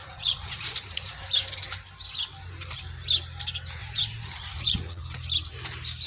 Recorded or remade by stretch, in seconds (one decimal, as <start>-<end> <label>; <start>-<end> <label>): 0.0-1.1 remade; 1.1-3.8 recorded; 3.8-5.0 remade; 5.0-6.1 recorded